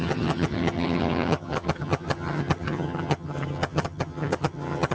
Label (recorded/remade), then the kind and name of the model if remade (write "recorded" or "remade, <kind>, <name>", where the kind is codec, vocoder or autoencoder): remade, vocoder, HiFi-GAN